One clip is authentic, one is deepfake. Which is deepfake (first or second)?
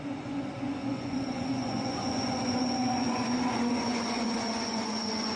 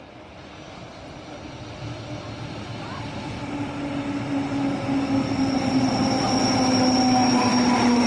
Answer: first